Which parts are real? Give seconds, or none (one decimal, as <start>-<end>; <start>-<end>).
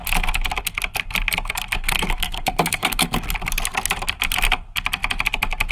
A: 0.0-1.8; 3.2-5.7